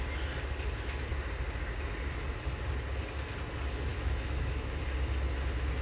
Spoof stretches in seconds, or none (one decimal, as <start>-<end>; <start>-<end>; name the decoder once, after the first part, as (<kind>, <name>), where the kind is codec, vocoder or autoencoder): 3.9-4.8 (autoencoder, DAC-VAE)